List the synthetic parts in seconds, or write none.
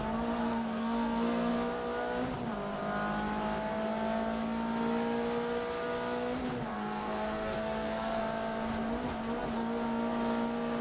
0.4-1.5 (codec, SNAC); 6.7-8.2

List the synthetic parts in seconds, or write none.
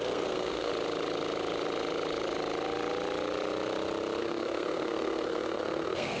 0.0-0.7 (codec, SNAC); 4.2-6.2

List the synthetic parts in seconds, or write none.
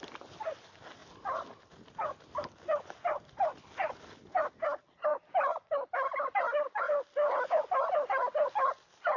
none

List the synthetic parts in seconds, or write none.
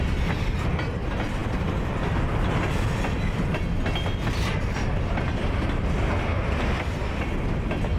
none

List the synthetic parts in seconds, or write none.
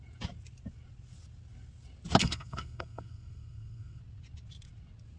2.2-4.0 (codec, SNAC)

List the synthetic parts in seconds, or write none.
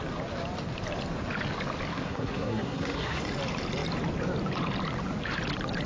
1.9-3.2 (codec, SNAC)